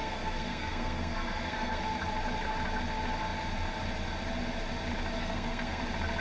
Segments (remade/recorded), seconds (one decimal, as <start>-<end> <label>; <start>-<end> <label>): 0.0-1.8 remade; 1.8-5.2 recorded; 5.2-5.8 remade; 5.8-6.2 recorded